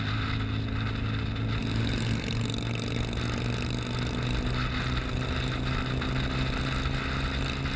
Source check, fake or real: real